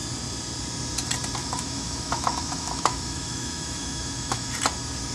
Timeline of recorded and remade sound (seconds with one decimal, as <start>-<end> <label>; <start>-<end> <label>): 0.0-1.4 recorded; 1.4-4.5 remade; 4.5-5.1 recorded